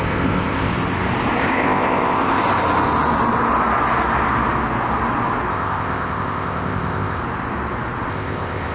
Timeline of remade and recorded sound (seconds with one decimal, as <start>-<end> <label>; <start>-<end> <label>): 0.0-0.7 remade; 0.7-1.4 recorded; 1.4-2.4 remade; 2.4-5.5 recorded; 5.5-7.2 remade; 7.2-8.1 recorded; 8.1-8.7 remade